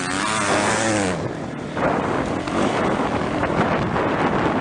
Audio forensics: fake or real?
real